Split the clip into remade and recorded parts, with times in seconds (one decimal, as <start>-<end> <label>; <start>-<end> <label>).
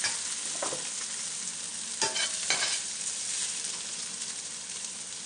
0.0-5.3 recorded